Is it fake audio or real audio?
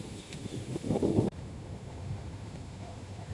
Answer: fake